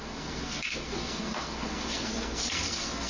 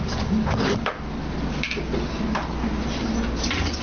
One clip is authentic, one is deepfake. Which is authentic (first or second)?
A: second